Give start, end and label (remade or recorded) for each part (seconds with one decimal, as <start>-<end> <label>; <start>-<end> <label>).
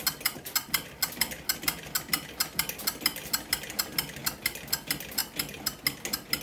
0.0-6.4 recorded